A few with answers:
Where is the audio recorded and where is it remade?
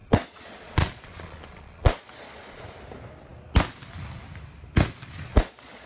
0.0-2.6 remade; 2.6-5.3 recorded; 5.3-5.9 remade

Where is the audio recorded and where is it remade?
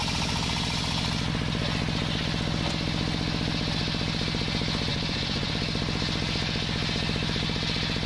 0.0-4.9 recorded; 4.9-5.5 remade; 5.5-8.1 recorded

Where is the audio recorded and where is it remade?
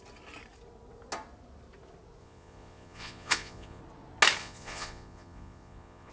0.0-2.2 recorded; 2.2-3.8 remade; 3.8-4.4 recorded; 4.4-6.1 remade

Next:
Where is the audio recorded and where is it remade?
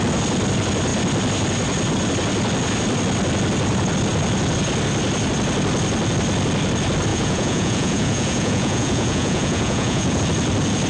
0.0-7.1 recorded; 7.1-10.2 remade; 10.2-10.9 recorded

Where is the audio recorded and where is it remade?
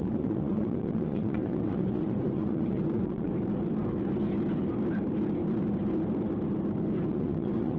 0.0-3.3 remade; 3.3-7.1 recorded; 7.1-7.8 remade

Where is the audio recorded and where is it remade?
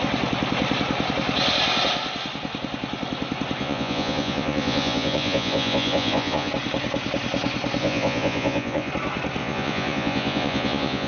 0.0-3.6 recorded; 3.6-6.5 remade; 6.5-7.8 recorded; 7.8-8.9 remade; 8.9-9.4 recorded; 9.4-11.1 remade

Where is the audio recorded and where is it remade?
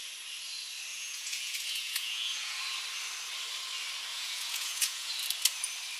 0.0-0.9 recorded; 0.9-2.6 remade; 2.6-4.1 recorded; 4.1-5.1 remade; 5.1-6.0 recorded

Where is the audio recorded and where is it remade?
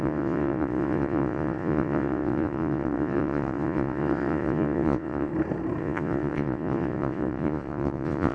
0.0-5.3 remade; 5.3-5.8 recorded; 5.8-8.3 remade